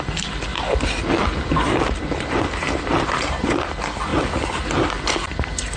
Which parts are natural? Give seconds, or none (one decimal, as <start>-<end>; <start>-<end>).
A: 0.0-5.8